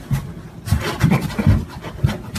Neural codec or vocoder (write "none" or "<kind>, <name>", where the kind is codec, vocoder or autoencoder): none